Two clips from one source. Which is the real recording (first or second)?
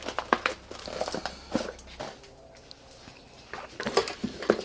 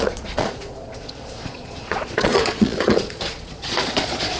first